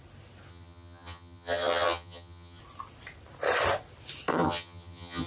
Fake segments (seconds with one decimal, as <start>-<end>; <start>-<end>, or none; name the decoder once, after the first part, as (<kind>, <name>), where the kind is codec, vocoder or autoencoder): 0.5-2.6 (vocoder, HiFi-GAN); 4.3-5.3